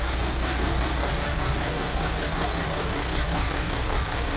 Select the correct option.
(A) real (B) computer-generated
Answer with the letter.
B